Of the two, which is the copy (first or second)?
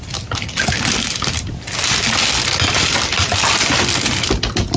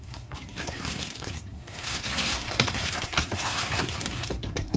second